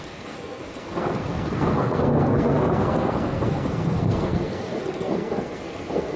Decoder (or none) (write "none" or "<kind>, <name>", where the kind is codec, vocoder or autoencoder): codec, SNAC